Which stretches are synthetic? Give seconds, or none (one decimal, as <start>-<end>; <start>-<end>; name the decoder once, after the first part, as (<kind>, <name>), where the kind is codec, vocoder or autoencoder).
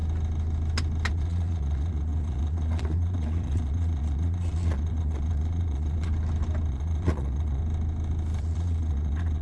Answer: 1.1-6.1 (vocoder, Vocos); 6.7-7.6; 8.4-9.4